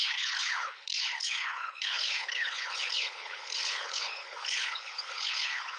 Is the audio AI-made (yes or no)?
yes